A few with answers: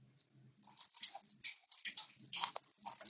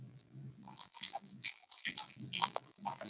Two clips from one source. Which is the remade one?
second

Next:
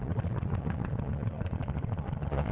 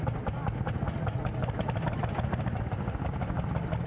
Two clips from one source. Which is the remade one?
first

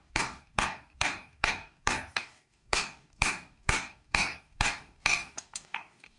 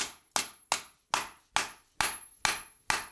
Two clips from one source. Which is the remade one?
first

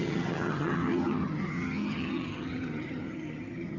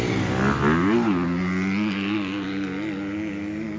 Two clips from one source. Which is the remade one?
first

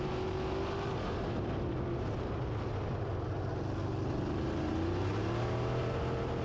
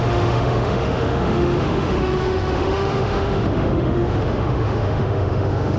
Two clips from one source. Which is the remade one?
second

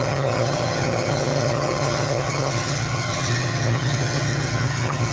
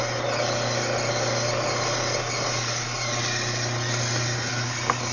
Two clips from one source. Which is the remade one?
first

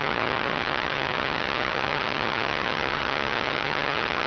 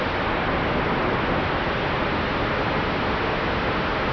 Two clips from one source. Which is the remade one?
first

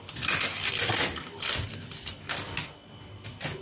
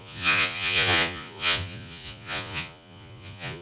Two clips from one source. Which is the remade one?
second